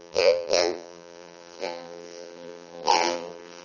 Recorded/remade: remade